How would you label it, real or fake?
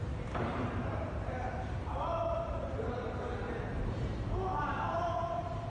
fake